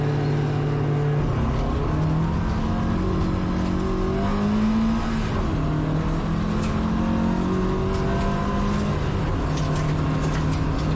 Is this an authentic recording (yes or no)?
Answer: yes